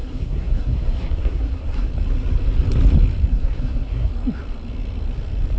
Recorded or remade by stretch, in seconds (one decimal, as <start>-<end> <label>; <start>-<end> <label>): 0.0-1.9 remade; 1.9-3.3 recorded; 3.3-4.1 remade; 4.1-5.6 recorded